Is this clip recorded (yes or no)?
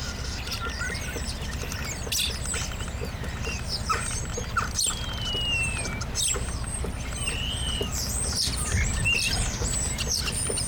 yes